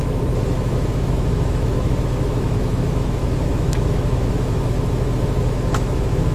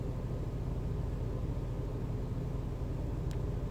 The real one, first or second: second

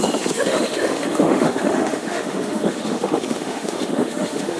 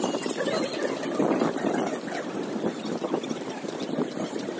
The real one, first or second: second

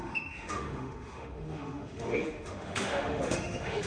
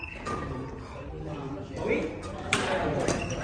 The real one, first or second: second